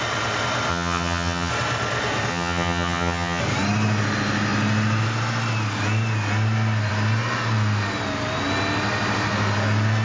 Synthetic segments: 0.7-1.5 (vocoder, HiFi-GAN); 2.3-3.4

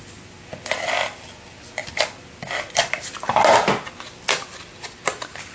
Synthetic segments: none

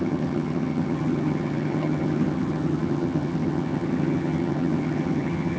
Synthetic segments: 0.0-5.6 (vocoder, HiFi-GAN)

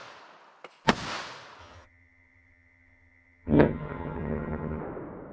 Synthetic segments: 1.6-4.8 (vocoder, HiFi-GAN)

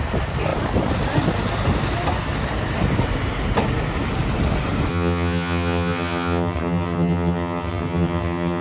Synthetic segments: 4.9-8.6 (vocoder, HiFi-GAN)

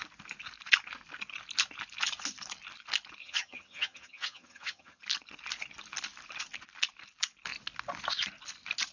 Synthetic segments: 3.2-5.0 (vocoder, HiFi-GAN)

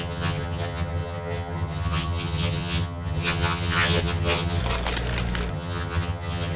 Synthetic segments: 0.0-4.6 (vocoder, HiFi-GAN); 5.5-6.6

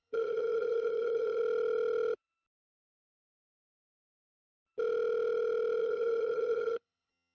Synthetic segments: 0.0-1.4 (vocoder, HiFi-GAN); 5.8-7.3